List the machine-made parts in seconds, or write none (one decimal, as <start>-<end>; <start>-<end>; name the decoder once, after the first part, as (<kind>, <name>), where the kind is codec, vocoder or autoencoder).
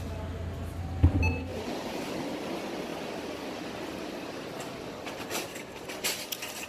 1.5-2.1 (vocoder, BigVGAN v2)